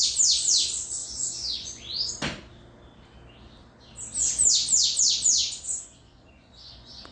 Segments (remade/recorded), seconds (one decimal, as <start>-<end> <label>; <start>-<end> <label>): 0.0-1.0 recorded; 1.0-2.1 remade; 2.1-5.4 recorded; 5.4-7.1 remade

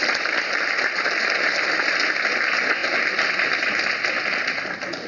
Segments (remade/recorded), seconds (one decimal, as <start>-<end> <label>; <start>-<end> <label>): 0.0-5.1 recorded

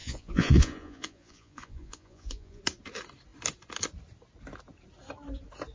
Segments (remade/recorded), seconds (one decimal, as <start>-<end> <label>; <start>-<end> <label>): 0.0-2.6 remade; 2.6-5.7 recorded

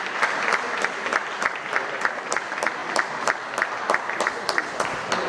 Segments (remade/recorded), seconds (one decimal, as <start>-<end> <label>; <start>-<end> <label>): 0.0-5.3 recorded

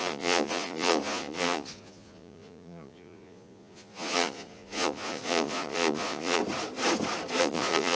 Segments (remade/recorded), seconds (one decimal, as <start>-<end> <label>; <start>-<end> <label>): 0.0-6.4 remade; 6.4-7.4 recorded; 7.4-7.9 remade

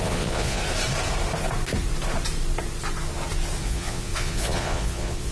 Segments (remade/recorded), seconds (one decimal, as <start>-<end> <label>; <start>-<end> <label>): 0.0-0.6 remade; 0.6-3.6 recorded; 3.6-5.3 remade